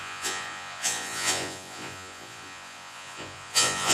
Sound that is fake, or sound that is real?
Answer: fake